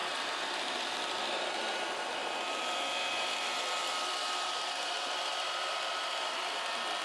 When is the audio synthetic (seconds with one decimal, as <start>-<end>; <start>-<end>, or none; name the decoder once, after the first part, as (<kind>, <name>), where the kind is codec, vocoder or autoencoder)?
0.0-0.5 (vocoder, BigVGAN v2); 2.2-6.4